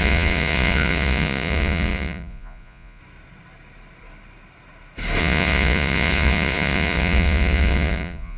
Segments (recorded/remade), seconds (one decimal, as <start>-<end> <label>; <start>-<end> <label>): 0.0-3.0 remade; 3.0-5.2 recorded; 5.2-8.4 remade